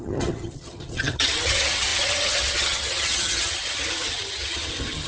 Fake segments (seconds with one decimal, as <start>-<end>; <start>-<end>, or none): 0.0-5.1